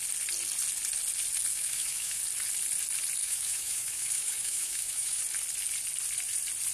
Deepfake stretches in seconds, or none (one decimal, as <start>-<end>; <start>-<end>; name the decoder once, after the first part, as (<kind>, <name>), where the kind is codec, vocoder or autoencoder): 1.5-2.2 (autoencoder, DAC-VAE); 3.2-5.2